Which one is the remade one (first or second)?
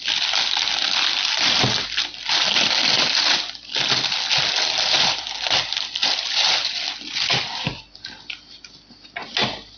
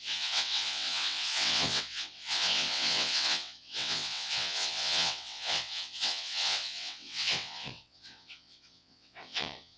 second